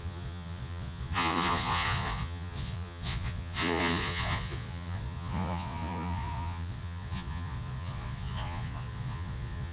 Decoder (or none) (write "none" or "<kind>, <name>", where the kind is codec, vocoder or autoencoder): vocoder, Vocos